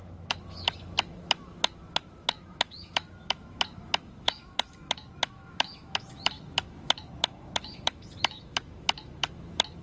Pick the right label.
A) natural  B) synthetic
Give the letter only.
B